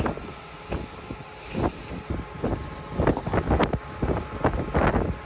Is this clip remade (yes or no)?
no